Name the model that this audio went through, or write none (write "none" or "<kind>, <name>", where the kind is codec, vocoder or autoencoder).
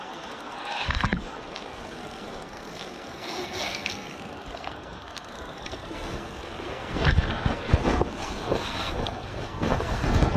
codec, SNAC